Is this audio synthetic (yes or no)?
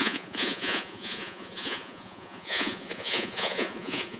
yes